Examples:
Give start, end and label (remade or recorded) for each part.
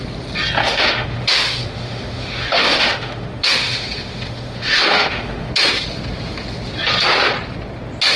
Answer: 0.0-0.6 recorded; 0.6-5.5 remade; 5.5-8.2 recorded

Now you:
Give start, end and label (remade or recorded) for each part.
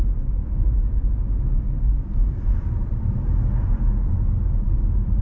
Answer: 0.0-0.4 recorded; 0.4-1.8 remade; 1.8-2.8 recorded; 2.8-3.5 remade; 3.5-4.4 recorded; 4.4-5.2 remade